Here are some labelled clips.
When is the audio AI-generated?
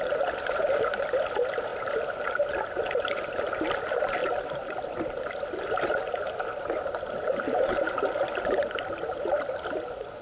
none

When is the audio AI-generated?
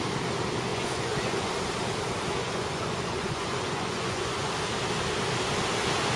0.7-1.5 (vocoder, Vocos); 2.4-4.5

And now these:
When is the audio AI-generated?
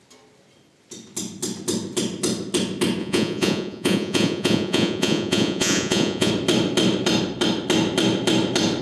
3.0-6.3 (vocoder, Vocos)